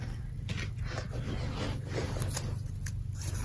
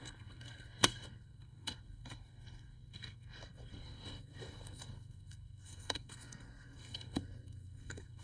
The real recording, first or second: first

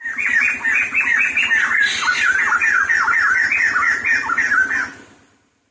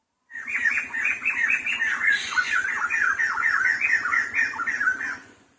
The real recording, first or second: first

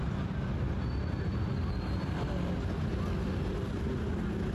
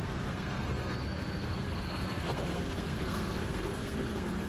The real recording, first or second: first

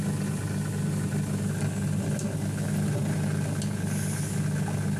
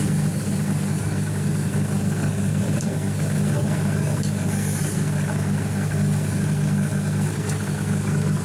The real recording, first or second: first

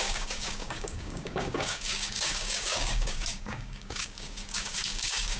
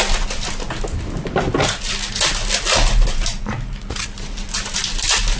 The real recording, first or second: second